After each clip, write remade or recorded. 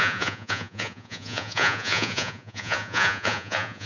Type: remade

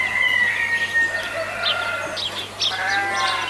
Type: recorded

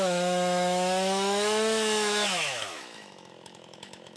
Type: remade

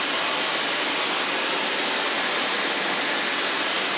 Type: recorded